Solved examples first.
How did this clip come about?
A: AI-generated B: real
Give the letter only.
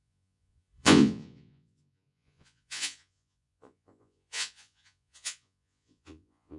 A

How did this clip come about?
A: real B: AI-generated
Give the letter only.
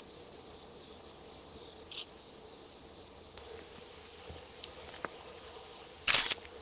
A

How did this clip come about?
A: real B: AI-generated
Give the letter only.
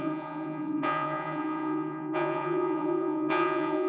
B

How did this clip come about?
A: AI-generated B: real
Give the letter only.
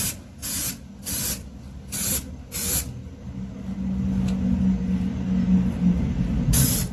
B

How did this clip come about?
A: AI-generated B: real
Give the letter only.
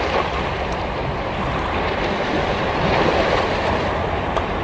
B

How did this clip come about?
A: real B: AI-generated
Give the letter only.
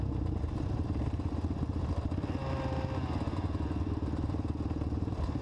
A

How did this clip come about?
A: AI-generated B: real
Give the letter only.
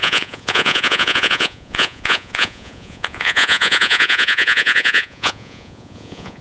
A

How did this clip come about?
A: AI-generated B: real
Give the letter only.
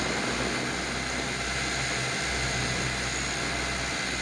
B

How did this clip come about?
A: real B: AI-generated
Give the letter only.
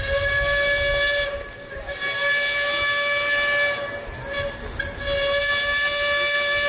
A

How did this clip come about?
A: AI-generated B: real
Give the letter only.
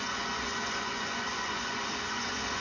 A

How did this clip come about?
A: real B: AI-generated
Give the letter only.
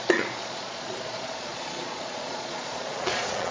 B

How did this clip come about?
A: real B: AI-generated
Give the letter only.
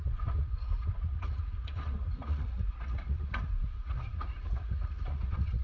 B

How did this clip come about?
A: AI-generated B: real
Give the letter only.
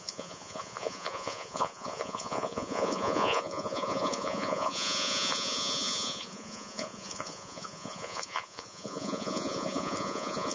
A